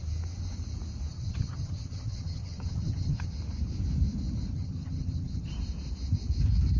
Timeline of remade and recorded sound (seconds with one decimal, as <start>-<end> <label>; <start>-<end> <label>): 0.0-1.1 recorded; 1.1-3.3 remade; 3.3-4.5 recorded; 4.5-5.5 remade; 5.5-6.8 recorded